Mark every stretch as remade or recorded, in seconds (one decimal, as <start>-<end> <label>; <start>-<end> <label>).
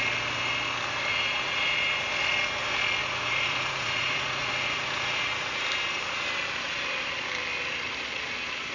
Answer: 0.0-1.1 recorded; 1.1-2.1 remade; 2.1-3.0 recorded; 3.0-5.6 remade; 5.6-8.7 recorded